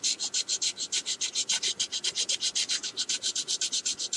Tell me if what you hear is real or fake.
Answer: real